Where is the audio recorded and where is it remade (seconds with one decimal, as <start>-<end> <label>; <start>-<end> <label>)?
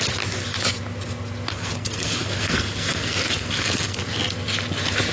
0.0-1.5 recorded; 1.5-4.0 remade; 4.0-5.1 recorded